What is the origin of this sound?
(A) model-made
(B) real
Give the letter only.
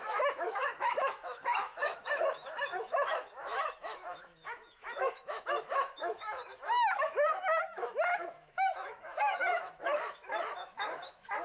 A